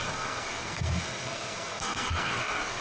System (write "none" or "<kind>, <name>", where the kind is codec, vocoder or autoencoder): codec, SNAC